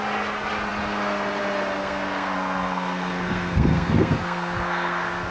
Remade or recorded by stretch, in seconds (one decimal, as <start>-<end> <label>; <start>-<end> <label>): 0.0-1.8 recorded; 1.8-5.3 remade